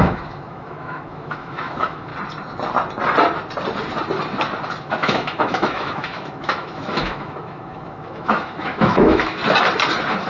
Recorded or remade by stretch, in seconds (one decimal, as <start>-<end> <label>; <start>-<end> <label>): 0.0-2.1 remade; 2.1-4.8 recorded; 4.8-9.4 remade; 9.4-10.3 recorded